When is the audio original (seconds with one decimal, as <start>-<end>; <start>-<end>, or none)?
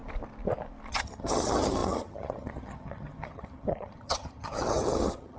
0.0-0.9